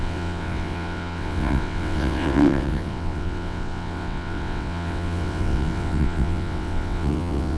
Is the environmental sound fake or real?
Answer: fake